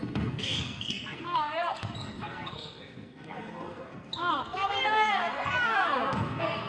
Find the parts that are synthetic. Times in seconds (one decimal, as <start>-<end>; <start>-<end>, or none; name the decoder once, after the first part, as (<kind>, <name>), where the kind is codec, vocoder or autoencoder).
0.0-6.7 (codec, SNAC)